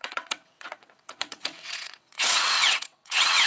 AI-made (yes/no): yes